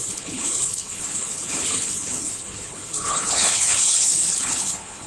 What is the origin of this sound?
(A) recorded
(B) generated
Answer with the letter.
B